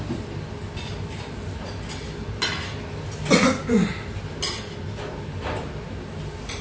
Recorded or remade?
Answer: recorded